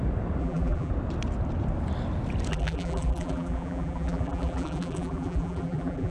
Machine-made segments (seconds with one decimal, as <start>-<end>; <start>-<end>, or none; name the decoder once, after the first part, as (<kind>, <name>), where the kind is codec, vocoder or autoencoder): 0.4-0.9 (vocoder, BigVGAN v2); 2.5-6.1